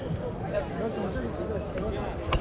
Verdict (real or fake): real